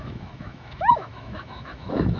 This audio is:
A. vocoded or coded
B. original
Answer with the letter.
A